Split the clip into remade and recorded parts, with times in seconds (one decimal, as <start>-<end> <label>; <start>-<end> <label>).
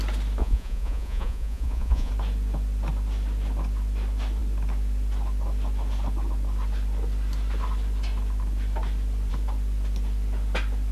0.0-0.4 recorded; 0.4-2.1 remade; 2.1-10.9 recorded